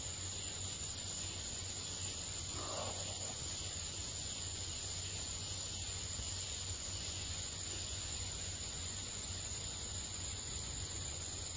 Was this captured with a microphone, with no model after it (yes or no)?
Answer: no